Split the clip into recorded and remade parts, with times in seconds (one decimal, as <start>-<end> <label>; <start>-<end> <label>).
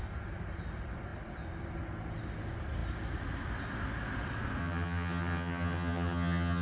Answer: 0.0-4.6 recorded; 4.6-6.6 remade